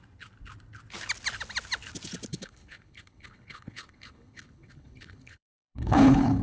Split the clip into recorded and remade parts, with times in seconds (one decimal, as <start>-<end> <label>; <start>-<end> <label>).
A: 0.0-2.3 recorded; 2.3-6.4 remade